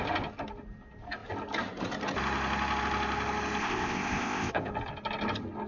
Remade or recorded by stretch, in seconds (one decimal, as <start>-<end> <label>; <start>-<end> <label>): 0.0-3.6 recorded; 3.6-4.7 remade; 4.7-5.7 recorded